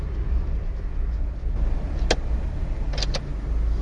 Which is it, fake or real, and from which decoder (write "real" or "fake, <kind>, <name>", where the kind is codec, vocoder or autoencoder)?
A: real